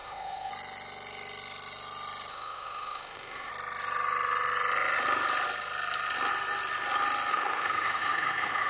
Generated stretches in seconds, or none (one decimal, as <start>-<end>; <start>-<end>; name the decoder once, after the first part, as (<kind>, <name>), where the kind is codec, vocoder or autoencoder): 0.0-0.5 (autoencoder, DAC-VAE); 2.3-3.5; 7.3-8.7